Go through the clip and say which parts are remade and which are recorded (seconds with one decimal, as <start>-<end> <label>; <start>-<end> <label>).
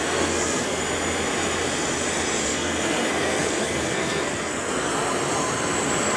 0.0-0.8 remade; 0.8-2.4 recorded; 2.4-4.9 remade; 4.9-6.2 recorded